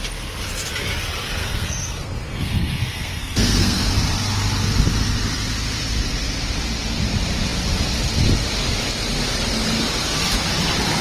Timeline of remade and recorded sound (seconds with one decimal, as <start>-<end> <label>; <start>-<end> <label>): 0.0-1.4 recorded; 1.4-3.9 remade; 3.9-11.0 recorded